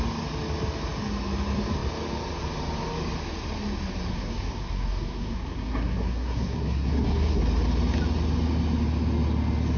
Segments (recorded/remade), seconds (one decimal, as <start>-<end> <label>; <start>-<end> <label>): 0.0-4.1 recorded; 4.1-7.4 remade; 7.4-9.8 recorded